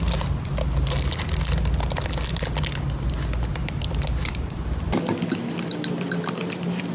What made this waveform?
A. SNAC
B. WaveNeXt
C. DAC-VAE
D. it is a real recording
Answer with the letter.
D